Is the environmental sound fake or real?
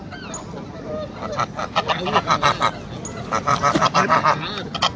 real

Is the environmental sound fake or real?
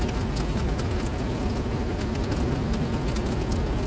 real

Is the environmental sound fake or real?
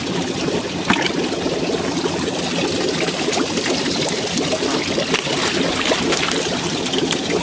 real